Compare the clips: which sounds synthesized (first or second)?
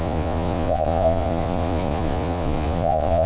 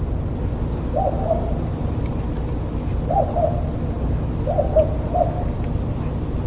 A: first